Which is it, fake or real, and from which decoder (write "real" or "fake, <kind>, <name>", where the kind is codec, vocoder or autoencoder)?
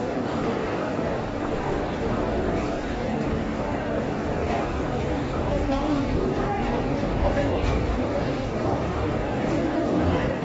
fake, codec, DAC